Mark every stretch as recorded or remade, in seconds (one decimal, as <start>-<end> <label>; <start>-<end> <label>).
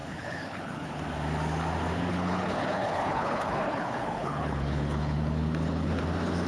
0.0-1.0 remade; 1.0-2.1 recorded; 2.1-6.0 remade; 6.0-6.5 recorded